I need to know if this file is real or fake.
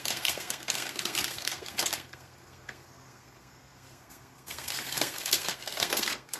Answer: fake